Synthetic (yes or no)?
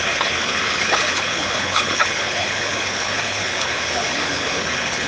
yes